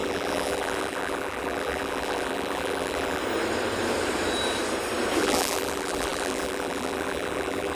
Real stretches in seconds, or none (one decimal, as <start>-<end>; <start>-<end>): 3.2-5.2

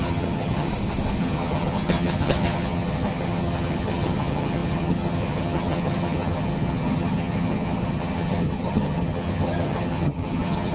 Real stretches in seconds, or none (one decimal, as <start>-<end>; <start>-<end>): 0.7-1.2

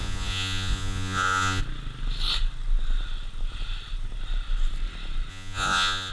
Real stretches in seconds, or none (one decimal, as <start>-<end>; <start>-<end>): 1.6-5.3